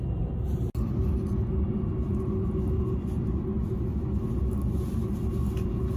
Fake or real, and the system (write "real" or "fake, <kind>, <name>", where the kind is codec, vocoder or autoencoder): real